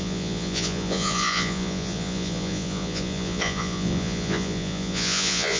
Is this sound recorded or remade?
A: remade